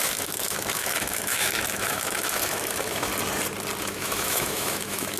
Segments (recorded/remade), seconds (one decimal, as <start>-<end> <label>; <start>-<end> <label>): 0.0-3.1 remade; 3.1-3.8 recorded; 3.8-5.2 remade